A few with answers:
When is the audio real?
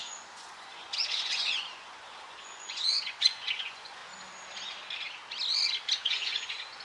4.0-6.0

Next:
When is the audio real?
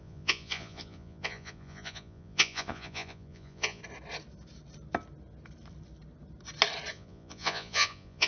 3.8-6.9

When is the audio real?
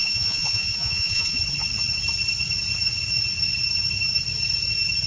1.4-5.1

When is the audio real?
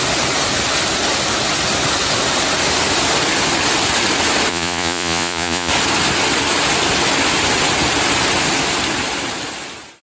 0.0-4.5; 5.7-10.2